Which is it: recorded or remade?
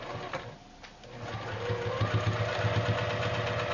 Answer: recorded